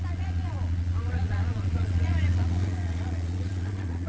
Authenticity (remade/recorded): remade